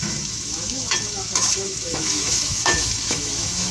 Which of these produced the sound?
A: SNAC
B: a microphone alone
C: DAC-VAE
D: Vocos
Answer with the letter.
C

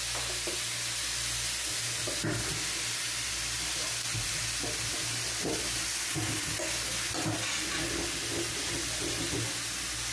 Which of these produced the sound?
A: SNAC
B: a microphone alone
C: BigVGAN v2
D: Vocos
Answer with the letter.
B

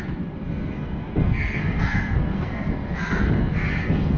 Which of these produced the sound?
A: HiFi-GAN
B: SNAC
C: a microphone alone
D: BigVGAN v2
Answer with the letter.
B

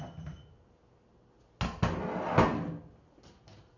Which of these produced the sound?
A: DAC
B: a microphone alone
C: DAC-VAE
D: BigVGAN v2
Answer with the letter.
B